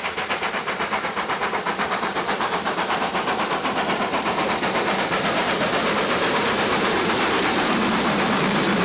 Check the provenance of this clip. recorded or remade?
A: remade